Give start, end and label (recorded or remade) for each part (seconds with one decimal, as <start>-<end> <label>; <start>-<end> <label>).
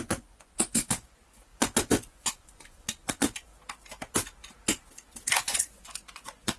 0.0-3.5 remade; 3.5-5.3 recorded; 5.3-6.6 remade